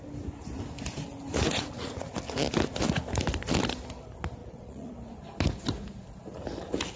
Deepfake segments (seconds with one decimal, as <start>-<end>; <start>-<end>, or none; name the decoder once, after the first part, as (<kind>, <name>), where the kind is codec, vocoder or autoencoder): 1.3-2.1 (vocoder, Vocos); 4.4-4.9